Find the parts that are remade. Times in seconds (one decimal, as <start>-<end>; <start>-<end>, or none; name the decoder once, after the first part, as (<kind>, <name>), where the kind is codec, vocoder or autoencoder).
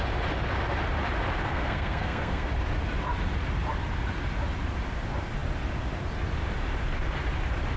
1.5-2.5 (codec, SNAC)